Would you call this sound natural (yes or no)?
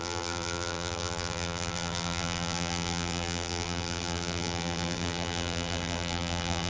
no